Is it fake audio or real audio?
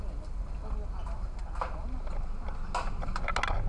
real